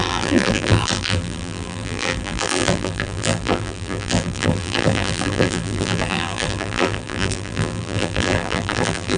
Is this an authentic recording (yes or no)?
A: no